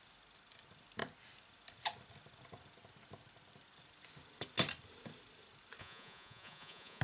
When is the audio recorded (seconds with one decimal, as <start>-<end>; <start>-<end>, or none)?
0.0-5.8